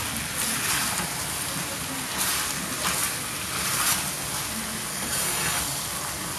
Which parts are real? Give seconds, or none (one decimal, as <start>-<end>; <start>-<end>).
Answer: 0.0-4.9; 5.6-6.4